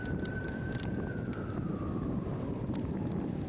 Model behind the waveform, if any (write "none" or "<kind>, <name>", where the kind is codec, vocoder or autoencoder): none